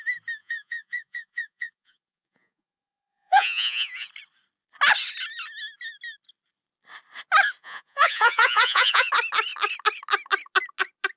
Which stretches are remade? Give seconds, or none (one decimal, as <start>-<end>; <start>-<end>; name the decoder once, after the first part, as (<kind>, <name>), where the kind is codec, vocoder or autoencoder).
0.4-4.1 (vocoder, Vocos); 7.6-9.1